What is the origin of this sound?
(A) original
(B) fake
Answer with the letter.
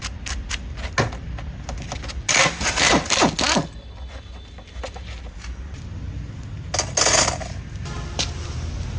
A